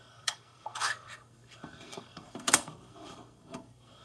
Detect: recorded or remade remade